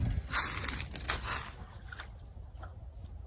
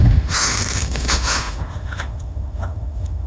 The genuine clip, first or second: first